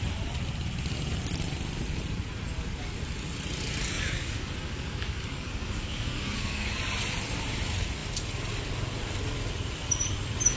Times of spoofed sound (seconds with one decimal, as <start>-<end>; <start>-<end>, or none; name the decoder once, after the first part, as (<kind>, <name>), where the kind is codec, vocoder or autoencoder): 3.8-6.8 (codec, DAC)